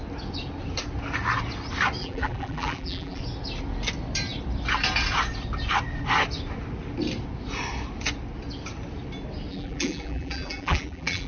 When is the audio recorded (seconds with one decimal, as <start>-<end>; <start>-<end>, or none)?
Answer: 0.0-2.0; 3.2-9.5